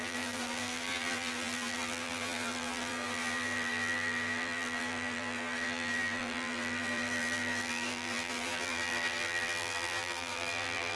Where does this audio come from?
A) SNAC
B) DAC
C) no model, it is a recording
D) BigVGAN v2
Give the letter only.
D